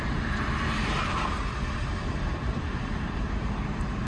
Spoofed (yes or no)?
yes